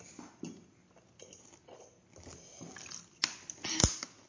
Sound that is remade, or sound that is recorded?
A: recorded